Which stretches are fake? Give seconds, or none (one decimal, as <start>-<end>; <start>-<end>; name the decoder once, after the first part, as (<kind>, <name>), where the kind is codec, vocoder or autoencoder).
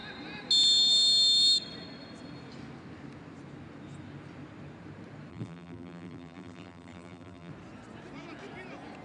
5.3-7.5 (vocoder, BigVGAN v2)